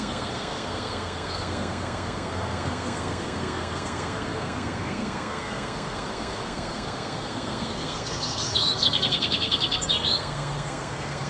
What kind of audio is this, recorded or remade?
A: remade